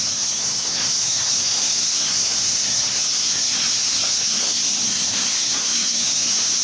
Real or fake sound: fake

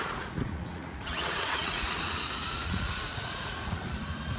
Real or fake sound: fake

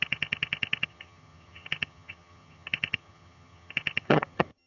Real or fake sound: fake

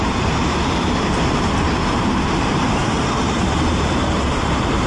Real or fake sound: fake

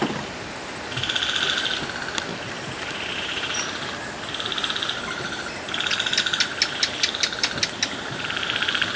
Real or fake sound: real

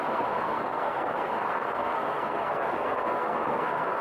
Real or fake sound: fake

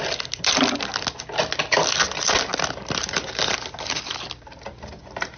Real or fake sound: real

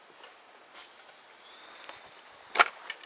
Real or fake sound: real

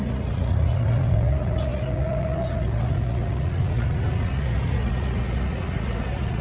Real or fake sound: fake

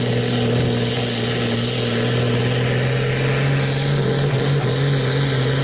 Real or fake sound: real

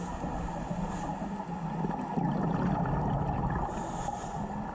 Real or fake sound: real